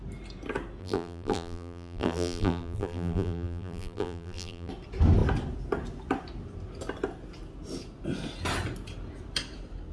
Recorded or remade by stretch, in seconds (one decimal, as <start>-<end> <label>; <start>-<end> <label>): 0.0-0.8 recorded; 0.8-4.7 remade; 4.7-9.9 recorded